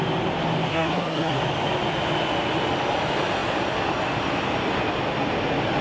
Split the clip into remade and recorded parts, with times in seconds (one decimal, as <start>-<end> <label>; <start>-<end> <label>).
0.0-0.7 recorded; 0.7-1.4 remade; 1.4-5.8 recorded